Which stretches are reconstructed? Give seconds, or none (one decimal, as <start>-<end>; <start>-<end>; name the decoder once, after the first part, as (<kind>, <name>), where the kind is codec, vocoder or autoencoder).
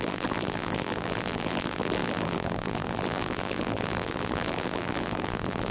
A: 0.0-5.7 (vocoder, BigVGAN v2)